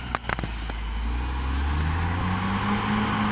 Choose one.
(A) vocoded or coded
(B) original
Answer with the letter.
B